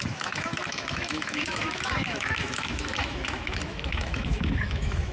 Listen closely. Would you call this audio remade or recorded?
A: remade